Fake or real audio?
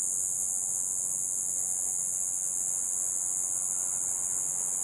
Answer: real